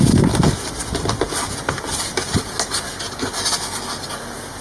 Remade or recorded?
recorded